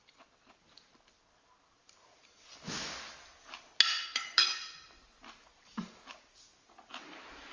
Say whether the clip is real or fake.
real